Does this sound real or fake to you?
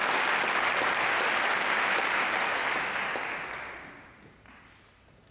real